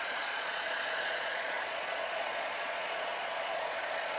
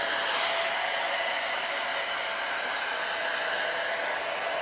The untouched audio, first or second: second